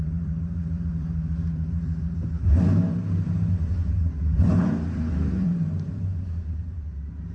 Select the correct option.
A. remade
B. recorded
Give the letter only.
A